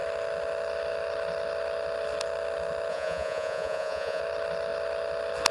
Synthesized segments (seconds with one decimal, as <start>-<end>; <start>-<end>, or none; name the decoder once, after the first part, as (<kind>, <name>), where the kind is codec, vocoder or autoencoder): 2.9-4.2 (vocoder, Vocos)